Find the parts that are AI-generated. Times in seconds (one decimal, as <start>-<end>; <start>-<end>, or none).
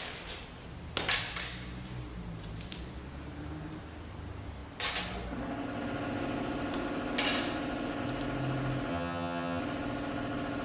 8.9-9.6